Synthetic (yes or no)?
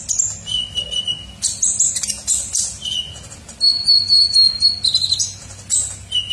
no